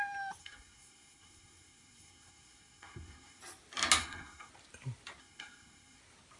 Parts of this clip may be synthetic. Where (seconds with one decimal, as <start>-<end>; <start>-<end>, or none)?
0.4-3.4; 4.0-4.5; 5.2-6.0